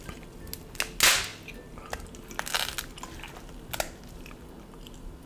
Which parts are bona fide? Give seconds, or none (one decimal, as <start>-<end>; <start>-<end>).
0.0-5.3

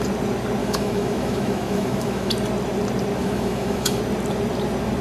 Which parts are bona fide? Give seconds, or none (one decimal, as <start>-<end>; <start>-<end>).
0.0-0.6; 2.3-3.2; 4.0-5.0

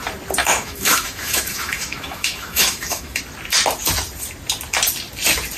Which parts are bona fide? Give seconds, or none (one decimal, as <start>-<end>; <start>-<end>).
0.0-0.4; 3.2-5.6

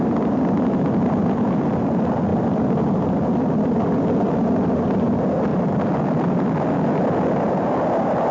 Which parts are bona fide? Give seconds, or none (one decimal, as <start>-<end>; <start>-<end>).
0.0-8.3

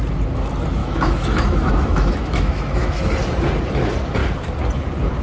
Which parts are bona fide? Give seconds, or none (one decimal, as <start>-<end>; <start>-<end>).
0.0-0.8; 3.0-5.2

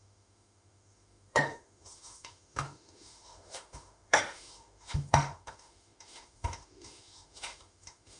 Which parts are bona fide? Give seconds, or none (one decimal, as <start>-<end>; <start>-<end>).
none

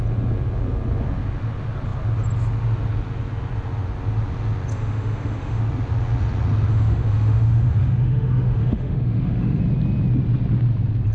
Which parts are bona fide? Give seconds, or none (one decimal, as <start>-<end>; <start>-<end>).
0.0-4.7; 5.6-6.7; 9.6-11.1

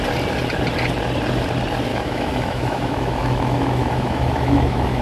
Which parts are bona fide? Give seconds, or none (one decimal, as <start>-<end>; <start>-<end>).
0.0-1.9